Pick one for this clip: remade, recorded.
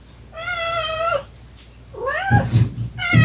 recorded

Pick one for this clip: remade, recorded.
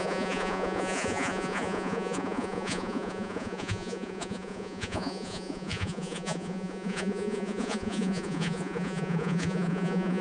remade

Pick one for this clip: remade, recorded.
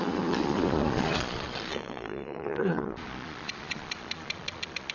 remade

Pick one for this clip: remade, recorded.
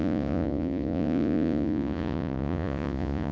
remade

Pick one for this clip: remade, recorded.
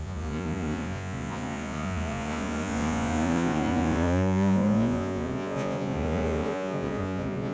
remade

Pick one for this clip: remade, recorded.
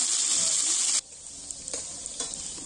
recorded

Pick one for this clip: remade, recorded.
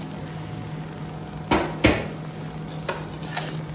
recorded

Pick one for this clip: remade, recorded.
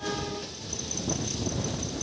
recorded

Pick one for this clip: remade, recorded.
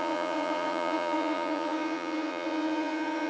remade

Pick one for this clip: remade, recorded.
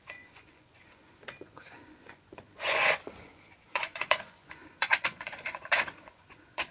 remade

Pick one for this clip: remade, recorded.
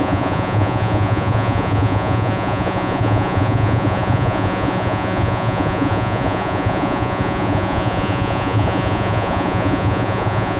remade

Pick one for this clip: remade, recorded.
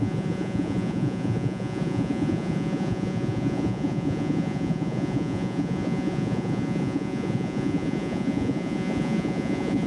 remade